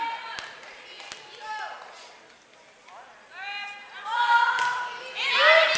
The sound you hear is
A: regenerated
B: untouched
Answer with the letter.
B